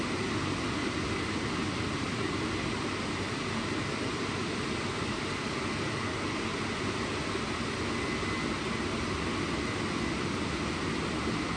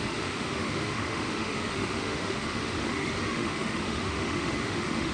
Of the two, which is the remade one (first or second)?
second